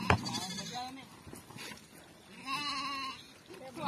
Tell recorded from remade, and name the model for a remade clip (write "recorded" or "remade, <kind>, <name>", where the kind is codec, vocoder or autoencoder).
recorded